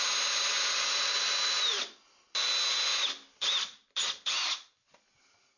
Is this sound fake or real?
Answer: real